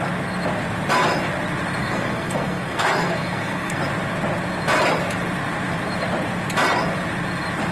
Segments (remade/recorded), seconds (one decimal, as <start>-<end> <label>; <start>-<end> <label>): 0.0-1.8 recorded; 1.8-3.8 remade; 3.8-7.7 recorded